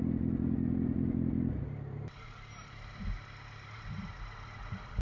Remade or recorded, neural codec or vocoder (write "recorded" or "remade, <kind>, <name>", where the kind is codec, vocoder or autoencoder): recorded